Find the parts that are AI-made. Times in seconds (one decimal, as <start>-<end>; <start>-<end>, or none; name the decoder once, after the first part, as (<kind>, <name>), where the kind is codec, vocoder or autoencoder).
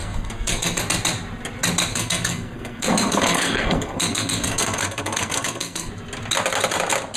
0.0-0.8 (codec, SNAC); 1.9-5.9